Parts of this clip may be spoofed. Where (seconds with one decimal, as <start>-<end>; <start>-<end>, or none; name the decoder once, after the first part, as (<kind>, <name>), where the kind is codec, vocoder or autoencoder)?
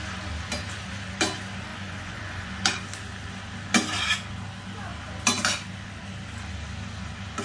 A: 1.7-2.5 (vocoder, Vocos)